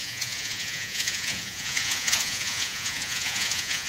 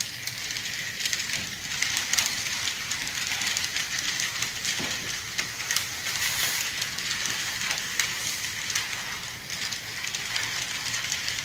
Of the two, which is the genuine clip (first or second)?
second